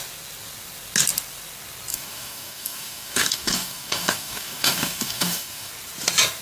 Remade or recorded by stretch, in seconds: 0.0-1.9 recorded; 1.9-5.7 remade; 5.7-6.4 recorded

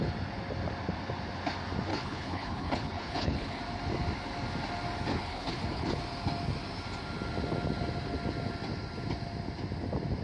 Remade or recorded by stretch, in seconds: 0.0-1.9 recorded; 1.9-3.6 remade; 3.6-5.1 recorded; 5.1-5.9 remade; 5.9-10.2 recorded

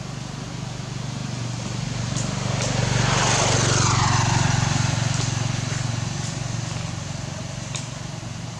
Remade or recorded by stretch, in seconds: 0.0-8.6 recorded

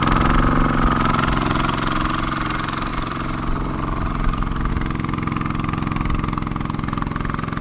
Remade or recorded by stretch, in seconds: 0.0-2.9 recorded; 2.9-4.7 remade; 4.7-7.6 recorded

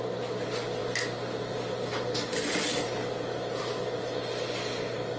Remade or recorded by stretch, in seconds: 0.0-5.2 recorded

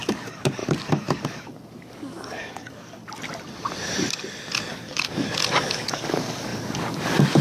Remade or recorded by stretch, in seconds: 0.0-3.0 remade; 3.0-4.6 recorded; 4.6-7.4 remade